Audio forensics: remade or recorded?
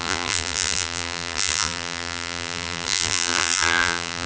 remade